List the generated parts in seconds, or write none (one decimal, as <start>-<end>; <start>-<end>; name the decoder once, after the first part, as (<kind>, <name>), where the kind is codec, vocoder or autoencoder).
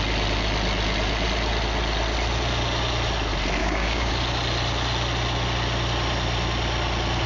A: 3.6-4.1 (codec, DAC)